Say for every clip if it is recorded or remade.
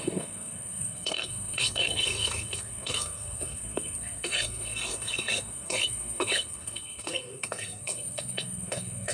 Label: remade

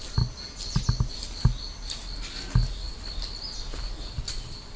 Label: recorded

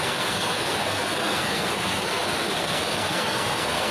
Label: remade